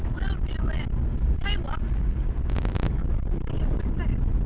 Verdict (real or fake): real